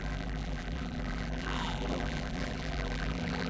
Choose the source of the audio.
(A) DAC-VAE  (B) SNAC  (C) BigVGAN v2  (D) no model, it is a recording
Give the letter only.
C